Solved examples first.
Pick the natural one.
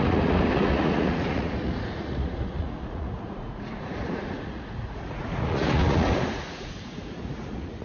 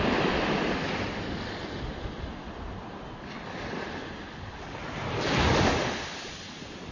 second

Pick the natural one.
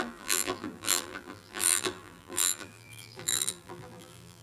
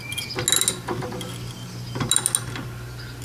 second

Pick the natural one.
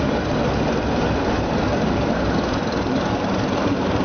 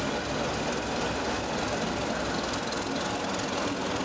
second